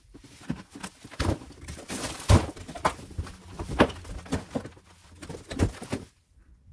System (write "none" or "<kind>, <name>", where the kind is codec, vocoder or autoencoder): none